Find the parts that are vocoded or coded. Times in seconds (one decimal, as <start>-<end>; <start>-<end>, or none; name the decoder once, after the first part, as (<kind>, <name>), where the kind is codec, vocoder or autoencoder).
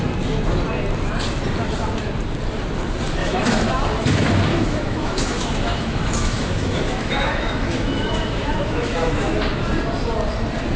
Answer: 3.2-3.7 (autoencoder, DAC-VAE); 4.5-9.3